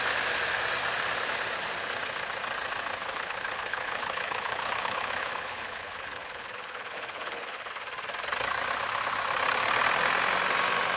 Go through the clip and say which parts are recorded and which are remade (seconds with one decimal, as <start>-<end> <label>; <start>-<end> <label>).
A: 0.0-3.0 recorded; 3.0-7.7 remade; 7.7-11.0 recorded